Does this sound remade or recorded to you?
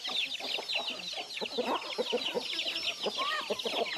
recorded